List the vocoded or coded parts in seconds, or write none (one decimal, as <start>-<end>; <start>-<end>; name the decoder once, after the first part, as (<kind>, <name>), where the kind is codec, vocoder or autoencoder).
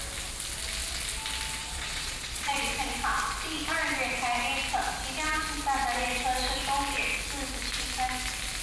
1.6-2.6 (vocoder, Vocos)